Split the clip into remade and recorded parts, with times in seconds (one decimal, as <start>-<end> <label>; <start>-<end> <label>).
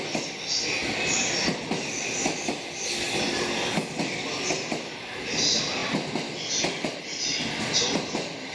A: 0.0-8.5 recorded